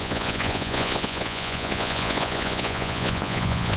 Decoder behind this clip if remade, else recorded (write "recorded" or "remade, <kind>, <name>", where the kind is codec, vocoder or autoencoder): remade, vocoder, Vocos